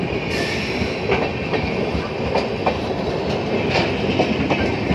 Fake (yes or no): no